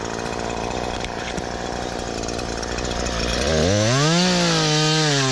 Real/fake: real